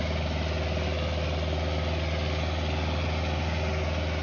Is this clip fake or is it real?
real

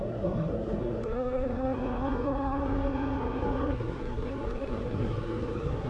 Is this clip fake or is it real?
fake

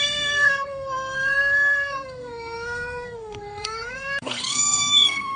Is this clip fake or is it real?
fake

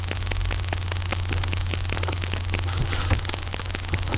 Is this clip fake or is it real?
real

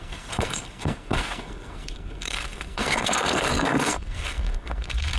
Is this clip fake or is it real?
fake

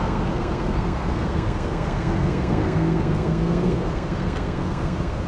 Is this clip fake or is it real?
fake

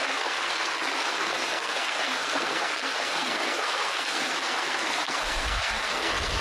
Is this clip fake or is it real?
fake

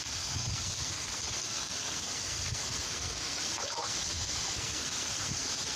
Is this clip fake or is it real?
fake